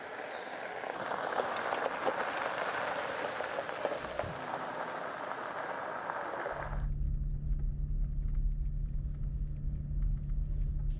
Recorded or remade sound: recorded